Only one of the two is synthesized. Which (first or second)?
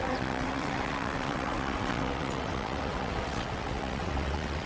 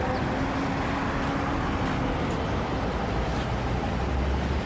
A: first